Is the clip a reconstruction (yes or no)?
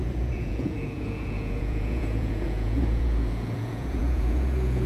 yes